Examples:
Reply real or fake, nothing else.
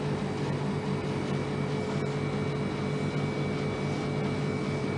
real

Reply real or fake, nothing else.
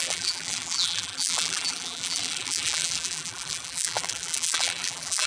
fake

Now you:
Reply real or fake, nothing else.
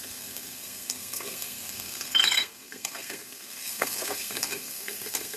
fake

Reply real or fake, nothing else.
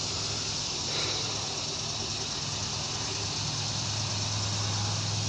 real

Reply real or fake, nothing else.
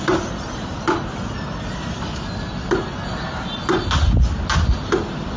real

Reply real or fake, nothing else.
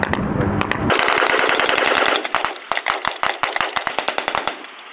real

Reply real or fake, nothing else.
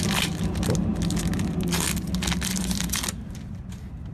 real